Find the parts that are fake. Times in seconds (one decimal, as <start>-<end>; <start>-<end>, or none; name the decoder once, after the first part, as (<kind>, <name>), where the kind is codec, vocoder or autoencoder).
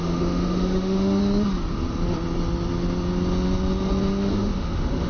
0.0-1.2 (autoencoder, DAC-VAE); 4.3-5.1